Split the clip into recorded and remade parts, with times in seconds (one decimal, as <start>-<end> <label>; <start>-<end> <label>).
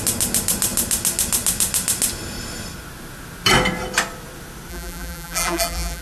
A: 0.0-4.7 recorded; 4.7-6.0 remade